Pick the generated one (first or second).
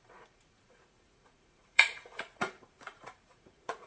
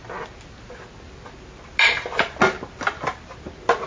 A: first